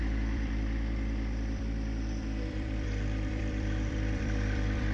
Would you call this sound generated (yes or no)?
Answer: yes